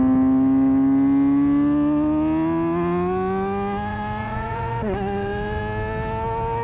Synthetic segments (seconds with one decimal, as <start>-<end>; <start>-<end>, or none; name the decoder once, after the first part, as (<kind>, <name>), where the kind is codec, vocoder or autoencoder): 3.9-5.6 (vocoder, Vocos)